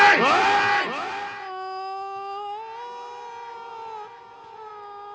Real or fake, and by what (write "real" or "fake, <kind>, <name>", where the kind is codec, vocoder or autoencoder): real